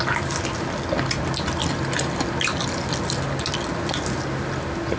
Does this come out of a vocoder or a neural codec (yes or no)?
no